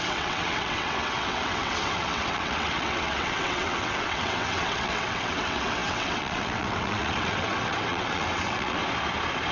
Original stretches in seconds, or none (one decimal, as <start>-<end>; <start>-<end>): 8.8-9.5